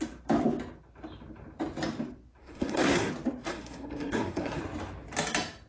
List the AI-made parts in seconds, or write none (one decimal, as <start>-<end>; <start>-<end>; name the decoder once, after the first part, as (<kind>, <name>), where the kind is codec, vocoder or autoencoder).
2.4-3.1 (codec, SNAC); 3.5-4.6